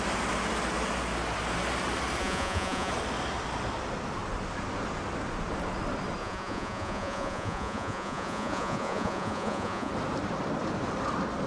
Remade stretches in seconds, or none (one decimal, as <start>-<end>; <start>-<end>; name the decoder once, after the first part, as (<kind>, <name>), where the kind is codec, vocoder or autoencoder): 2.2-2.9 (vocoder, Vocos); 6.2-9.9